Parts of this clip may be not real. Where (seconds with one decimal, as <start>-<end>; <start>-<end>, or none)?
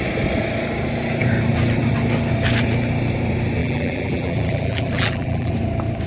3.6-5.5